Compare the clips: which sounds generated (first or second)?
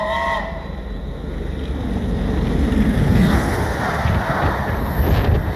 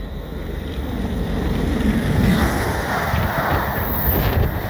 second